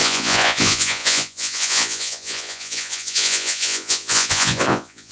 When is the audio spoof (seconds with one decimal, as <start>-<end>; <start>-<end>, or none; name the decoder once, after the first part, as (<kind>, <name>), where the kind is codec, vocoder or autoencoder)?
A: 0.0-5.1 (vocoder, Vocos)